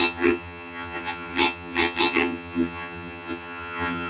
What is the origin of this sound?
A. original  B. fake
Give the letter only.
B